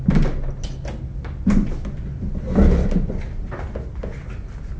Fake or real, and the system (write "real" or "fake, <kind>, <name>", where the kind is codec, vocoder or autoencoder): real